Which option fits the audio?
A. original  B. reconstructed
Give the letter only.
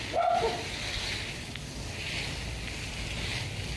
A